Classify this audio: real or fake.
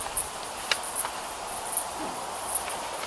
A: real